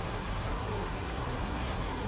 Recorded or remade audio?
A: remade